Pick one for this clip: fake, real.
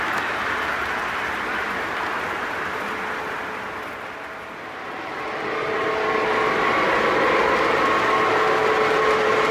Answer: real